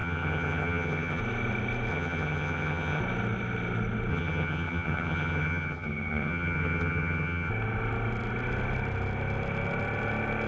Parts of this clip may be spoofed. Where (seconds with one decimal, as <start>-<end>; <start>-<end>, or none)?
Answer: 0.0-1.2; 1.9-3.0; 4.1-7.5